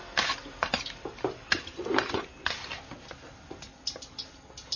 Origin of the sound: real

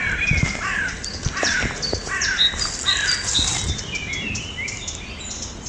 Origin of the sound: real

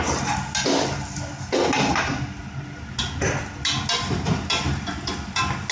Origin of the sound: real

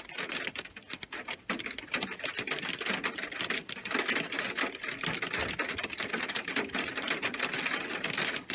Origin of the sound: real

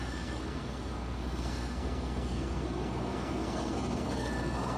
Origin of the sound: fake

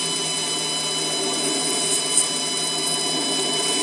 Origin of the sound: real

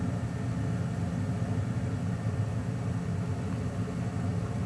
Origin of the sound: real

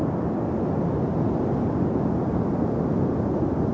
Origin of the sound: real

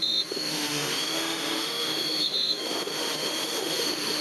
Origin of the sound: fake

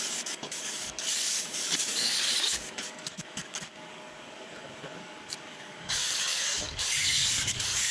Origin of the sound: fake